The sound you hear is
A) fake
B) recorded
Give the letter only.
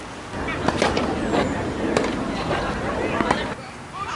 B